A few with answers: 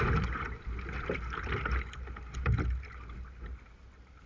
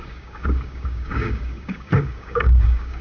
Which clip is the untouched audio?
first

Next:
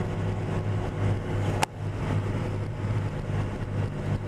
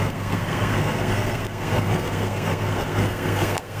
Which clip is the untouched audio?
first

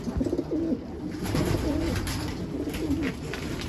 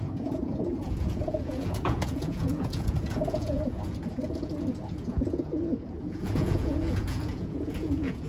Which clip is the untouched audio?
first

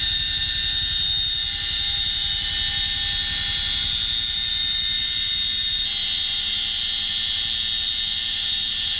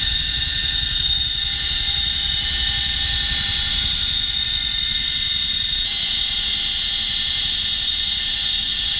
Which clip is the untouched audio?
first